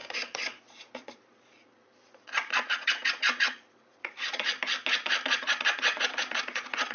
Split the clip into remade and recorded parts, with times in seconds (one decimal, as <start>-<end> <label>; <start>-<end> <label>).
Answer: 0.0-4.5 remade; 4.5-5.3 recorded; 5.3-6.9 remade